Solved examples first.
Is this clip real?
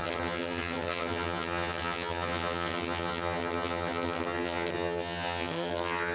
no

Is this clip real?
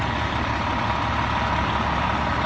yes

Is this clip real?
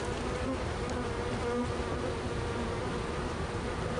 yes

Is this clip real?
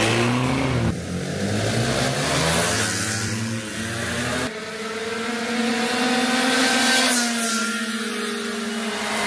yes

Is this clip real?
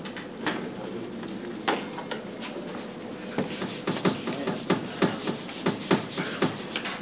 yes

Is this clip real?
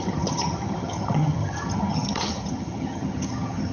no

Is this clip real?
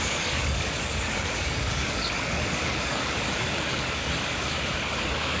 no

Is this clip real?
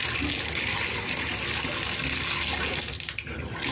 yes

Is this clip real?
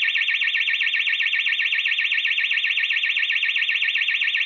yes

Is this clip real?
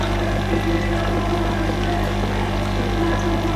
yes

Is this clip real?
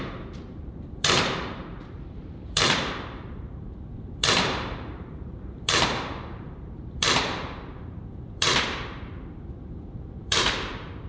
no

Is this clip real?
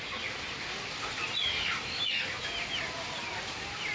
yes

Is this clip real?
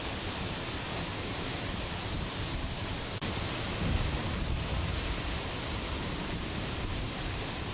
no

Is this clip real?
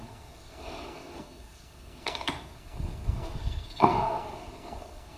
no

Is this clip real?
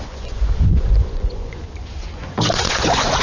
no